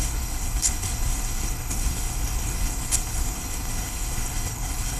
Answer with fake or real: fake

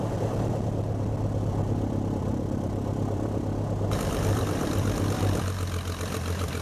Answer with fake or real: fake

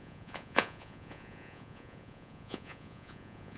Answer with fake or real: fake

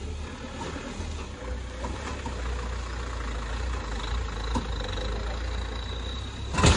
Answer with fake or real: real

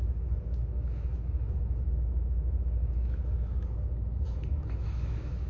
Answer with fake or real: fake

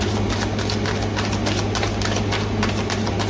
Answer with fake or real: real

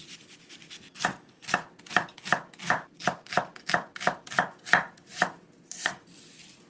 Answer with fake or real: real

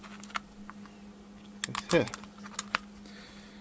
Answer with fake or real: real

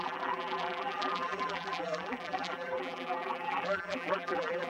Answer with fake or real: fake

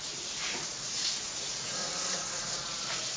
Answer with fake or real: fake